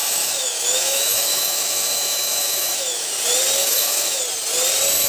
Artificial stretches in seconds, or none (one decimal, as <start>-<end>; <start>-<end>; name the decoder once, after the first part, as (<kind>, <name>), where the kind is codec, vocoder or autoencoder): 0.0-3.1 (autoencoder, DAC-VAE); 3.6-4.2